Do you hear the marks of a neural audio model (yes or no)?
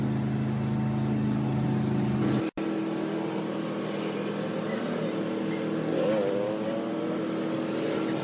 no